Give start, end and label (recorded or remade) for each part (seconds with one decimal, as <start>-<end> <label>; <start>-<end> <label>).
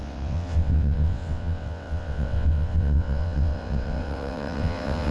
0.0-5.1 remade